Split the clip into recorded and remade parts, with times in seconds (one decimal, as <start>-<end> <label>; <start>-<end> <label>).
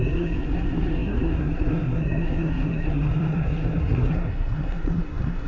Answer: 0.0-5.5 remade